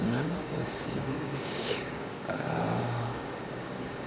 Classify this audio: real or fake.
fake